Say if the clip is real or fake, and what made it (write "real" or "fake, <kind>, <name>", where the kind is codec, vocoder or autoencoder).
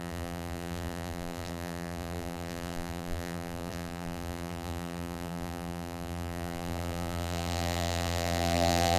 fake, vocoder, BigVGAN v2